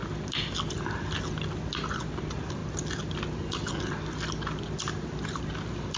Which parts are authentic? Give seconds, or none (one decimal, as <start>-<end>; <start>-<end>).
0.0-6.0